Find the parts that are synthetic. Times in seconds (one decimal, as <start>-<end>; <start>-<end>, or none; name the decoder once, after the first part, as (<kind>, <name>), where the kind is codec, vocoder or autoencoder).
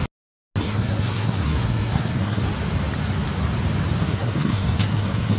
0.6-2.4 (codec, SNAC); 4.0-5.4